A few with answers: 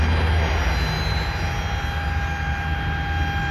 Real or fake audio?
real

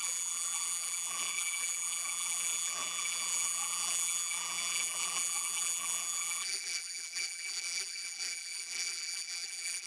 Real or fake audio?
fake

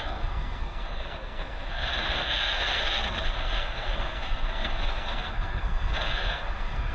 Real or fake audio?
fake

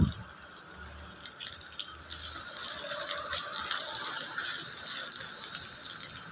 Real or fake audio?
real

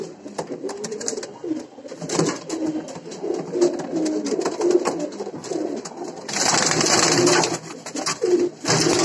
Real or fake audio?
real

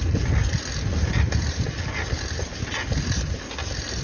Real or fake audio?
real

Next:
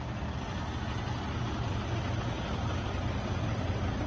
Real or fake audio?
real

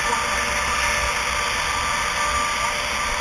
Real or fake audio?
real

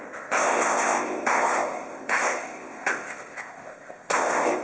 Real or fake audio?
fake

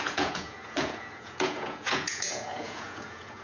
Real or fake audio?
fake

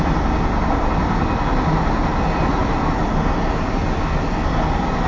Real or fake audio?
real